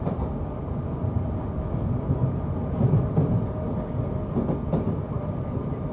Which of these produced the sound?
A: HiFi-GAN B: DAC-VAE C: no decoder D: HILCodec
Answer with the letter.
C